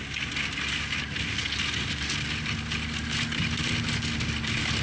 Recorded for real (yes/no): yes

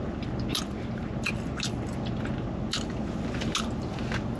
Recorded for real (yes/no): yes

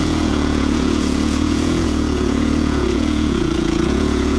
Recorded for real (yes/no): no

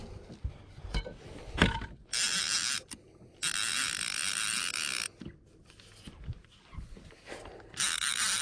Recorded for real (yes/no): yes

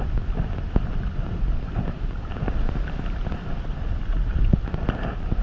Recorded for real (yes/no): yes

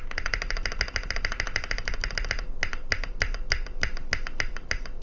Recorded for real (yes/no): yes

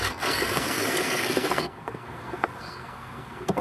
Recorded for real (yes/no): no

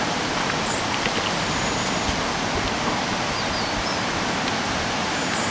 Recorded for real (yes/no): yes